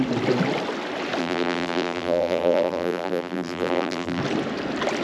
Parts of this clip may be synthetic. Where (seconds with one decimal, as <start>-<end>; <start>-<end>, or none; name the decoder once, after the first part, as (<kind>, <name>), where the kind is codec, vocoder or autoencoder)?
1.2-4.2 (vocoder, BigVGAN v2)